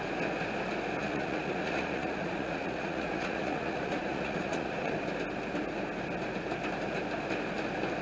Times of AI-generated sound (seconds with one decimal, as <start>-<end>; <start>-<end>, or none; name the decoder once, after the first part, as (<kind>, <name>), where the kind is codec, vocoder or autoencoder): 1.0-5.0 (vocoder, Vocos)